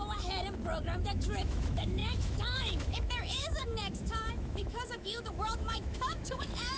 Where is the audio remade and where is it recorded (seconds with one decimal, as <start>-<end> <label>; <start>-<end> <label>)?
0.0-1.0 recorded; 1.0-6.8 remade